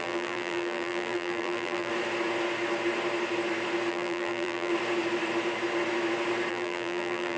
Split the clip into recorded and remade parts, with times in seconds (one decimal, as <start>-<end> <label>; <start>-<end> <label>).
0.0-1.9 remade; 1.9-3.9 recorded; 3.9-4.7 remade; 4.7-6.5 recorded; 6.5-7.4 remade